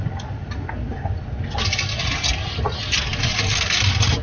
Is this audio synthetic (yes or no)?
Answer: no